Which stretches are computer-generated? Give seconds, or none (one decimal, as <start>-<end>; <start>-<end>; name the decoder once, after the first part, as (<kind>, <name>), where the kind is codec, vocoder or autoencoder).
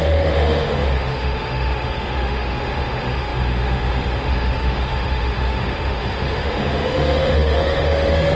0.0-8.4 (autoencoder, DAC-VAE)